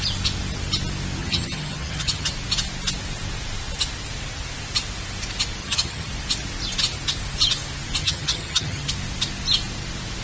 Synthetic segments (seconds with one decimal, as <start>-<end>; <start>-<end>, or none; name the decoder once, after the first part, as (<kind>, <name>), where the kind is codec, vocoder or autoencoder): 1.2-2.3 (vocoder, HiFi-GAN); 5.6-6.1; 8.0-8.9